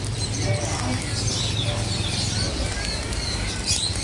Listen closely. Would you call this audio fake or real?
real